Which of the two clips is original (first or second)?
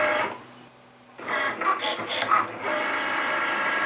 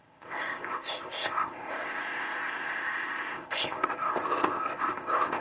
first